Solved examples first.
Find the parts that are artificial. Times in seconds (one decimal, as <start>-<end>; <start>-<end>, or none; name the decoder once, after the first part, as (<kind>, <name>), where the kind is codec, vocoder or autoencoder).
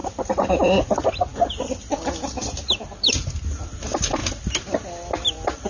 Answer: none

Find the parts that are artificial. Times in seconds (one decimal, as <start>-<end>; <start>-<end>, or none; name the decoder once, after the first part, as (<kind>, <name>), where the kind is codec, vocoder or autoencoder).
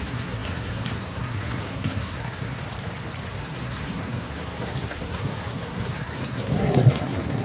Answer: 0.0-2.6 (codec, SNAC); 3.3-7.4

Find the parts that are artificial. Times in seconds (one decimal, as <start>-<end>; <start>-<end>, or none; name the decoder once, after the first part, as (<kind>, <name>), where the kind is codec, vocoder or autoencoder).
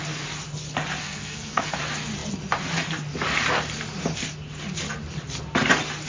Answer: 1.0-1.8 (codec, SNAC)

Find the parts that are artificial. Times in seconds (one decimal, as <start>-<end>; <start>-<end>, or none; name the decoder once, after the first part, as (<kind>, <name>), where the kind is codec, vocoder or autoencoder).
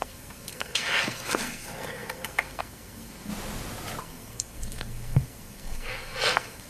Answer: 0.0-3.3 (codec, SNAC); 4.0-6.7